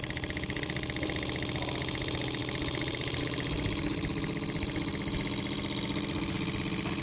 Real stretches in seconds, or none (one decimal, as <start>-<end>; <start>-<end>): 0.0-7.0